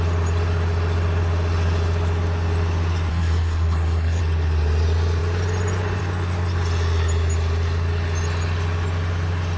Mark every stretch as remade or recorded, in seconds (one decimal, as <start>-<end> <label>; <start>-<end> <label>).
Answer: 0.0-3.1 recorded; 3.1-4.2 remade; 4.2-9.6 recorded

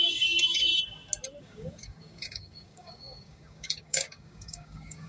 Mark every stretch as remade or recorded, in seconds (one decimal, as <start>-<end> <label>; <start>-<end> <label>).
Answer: 0.0-0.7 remade; 0.7-1.4 recorded; 1.4-5.1 remade

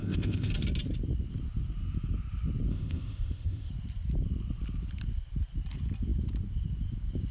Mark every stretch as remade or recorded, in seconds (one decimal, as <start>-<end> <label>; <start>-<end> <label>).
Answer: 0.0-0.5 remade; 0.5-2.7 recorded; 2.7-3.7 remade; 3.7-7.3 recorded

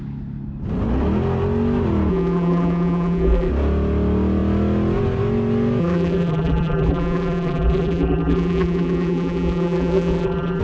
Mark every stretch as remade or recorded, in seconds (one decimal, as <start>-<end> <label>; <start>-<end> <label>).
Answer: 0.0-2.1 recorded; 2.1-3.5 remade; 3.5-5.8 recorded; 5.8-10.6 remade

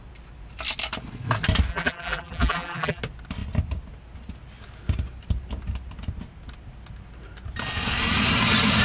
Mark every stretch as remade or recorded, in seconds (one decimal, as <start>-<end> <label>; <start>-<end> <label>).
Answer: 0.0-1.7 recorded; 1.7-3.0 remade; 3.0-8.8 recorded